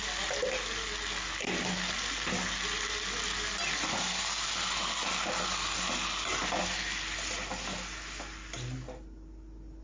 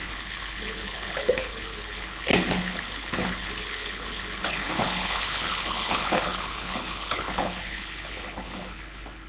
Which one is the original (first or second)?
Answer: first